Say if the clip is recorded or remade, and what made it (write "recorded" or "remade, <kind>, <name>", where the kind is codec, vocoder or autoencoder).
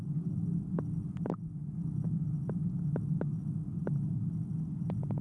recorded